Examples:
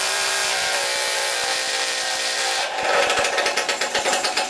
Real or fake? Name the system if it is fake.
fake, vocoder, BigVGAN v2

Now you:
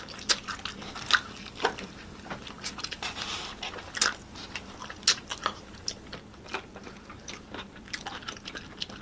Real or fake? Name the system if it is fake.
real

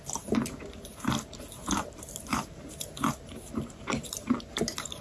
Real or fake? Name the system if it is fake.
fake, vocoder, BigVGAN v2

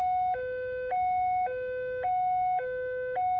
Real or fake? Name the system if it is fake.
real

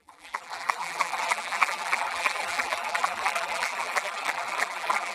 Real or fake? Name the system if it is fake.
fake, vocoder, BigVGAN v2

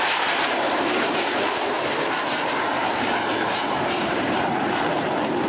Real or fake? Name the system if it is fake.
fake, vocoder, BigVGAN v2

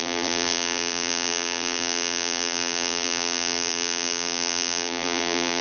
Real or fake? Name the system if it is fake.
fake, vocoder, BigVGAN v2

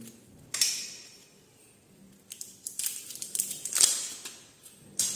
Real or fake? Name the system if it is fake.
real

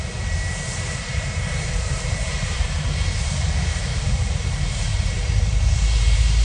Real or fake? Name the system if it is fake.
fake, vocoder, BigVGAN v2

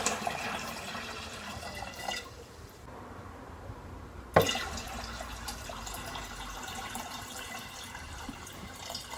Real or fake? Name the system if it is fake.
fake, vocoder, BigVGAN v2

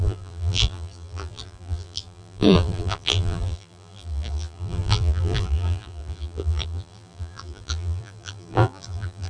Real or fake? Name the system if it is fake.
fake, vocoder, BigVGAN v2